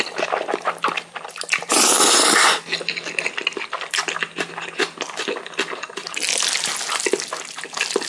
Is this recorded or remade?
recorded